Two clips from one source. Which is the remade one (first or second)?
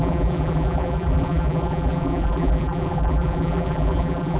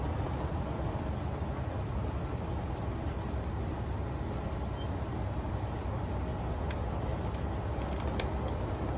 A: first